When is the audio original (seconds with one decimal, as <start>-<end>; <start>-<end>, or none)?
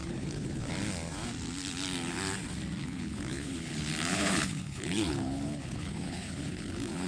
0.7-2.8